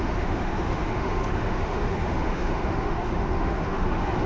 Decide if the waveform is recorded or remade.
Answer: remade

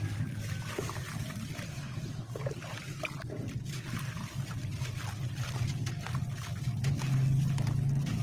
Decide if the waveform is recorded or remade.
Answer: recorded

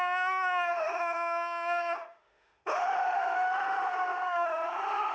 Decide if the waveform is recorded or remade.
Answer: remade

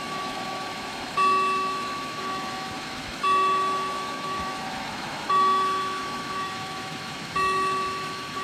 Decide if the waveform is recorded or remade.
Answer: remade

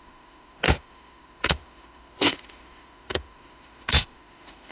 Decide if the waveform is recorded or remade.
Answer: remade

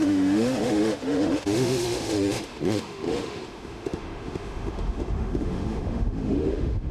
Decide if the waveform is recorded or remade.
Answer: remade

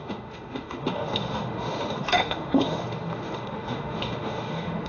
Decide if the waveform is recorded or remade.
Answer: remade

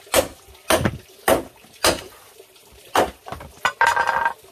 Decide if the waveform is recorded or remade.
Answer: recorded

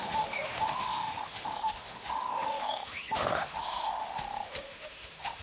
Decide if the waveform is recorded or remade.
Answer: remade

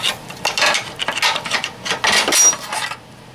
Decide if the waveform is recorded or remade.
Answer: recorded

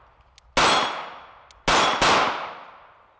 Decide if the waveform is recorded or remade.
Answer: recorded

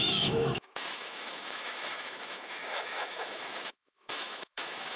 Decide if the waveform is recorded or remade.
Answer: remade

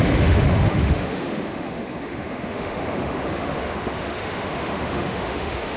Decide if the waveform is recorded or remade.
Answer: remade